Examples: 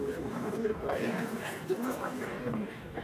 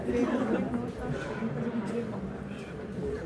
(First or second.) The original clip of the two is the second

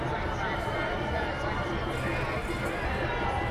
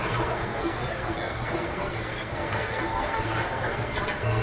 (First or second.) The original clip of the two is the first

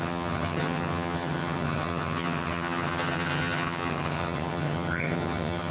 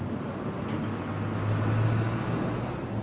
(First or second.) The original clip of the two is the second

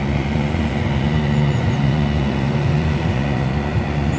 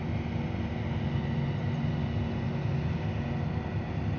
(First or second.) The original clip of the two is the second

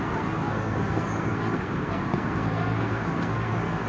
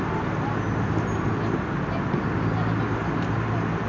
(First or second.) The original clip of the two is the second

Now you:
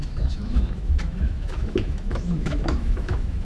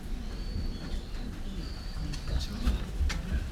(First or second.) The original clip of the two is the second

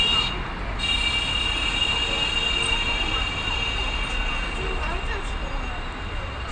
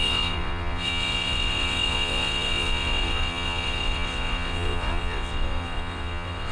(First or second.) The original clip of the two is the first